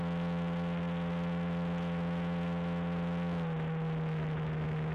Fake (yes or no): no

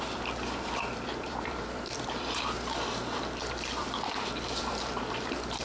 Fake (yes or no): yes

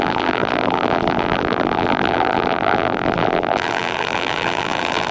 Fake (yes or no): yes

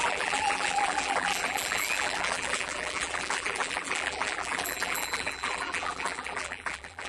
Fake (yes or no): yes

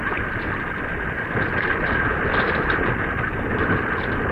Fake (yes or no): yes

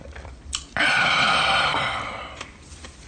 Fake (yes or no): yes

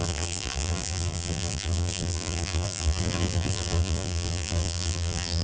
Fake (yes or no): yes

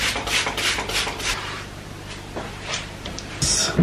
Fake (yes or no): yes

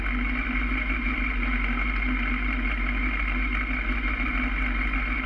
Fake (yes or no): no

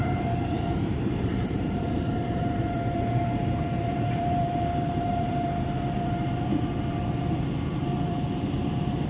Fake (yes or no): yes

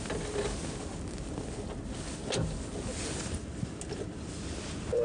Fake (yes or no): no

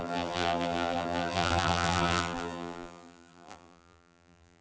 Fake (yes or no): yes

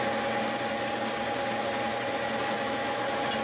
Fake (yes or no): no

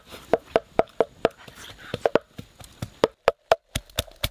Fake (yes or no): no